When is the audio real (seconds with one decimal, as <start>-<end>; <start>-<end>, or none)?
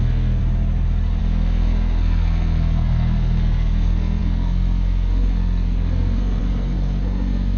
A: 0.4-1.2